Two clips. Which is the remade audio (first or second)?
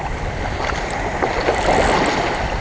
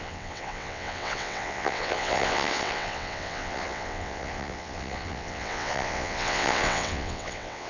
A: second